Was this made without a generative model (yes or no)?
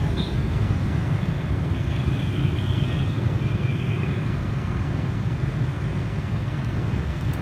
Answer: no